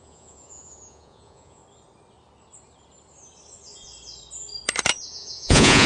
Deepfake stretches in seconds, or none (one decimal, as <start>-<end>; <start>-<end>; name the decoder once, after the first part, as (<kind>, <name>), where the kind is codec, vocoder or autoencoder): 0.0-1.6 (vocoder, Vocos); 5.1-5.9